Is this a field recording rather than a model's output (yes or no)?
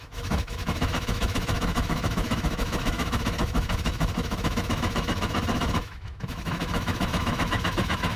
no